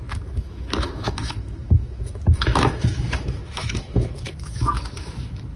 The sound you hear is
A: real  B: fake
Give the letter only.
B